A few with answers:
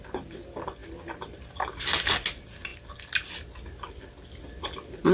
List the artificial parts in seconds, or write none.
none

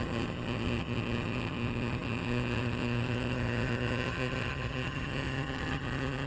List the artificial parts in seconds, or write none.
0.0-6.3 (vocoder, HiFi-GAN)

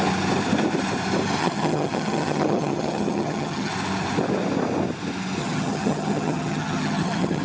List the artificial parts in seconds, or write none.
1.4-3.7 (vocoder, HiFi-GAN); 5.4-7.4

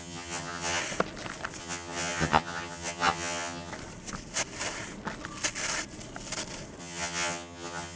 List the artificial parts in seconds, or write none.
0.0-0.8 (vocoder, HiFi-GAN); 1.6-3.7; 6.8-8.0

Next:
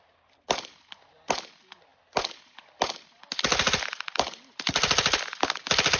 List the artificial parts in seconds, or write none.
none